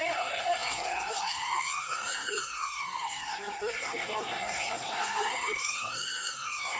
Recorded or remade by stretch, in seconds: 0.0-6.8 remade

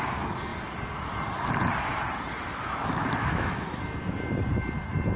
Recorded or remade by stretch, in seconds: 0.0-2.3 recorded; 2.3-3.8 remade; 3.8-5.2 recorded

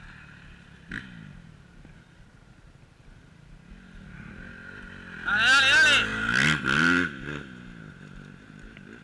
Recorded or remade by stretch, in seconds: 0.0-9.0 recorded

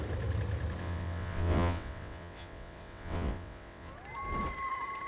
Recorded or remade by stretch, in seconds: 0.0-0.8 recorded; 0.8-3.9 remade; 3.9-5.1 recorded

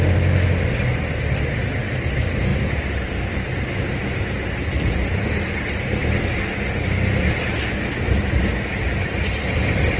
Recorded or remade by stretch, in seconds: 0.0-10.0 recorded

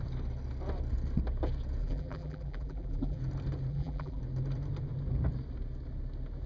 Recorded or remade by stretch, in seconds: 0.0-1.8 recorded; 1.8-3.2 remade; 3.2-3.7 recorded; 3.7-4.2 remade; 4.2-6.5 recorded

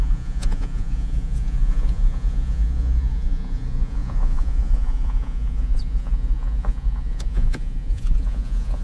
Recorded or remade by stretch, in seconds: 0.0-8.8 remade